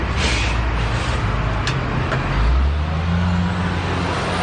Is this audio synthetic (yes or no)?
no